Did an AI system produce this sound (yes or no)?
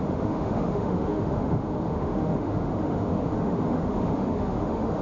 yes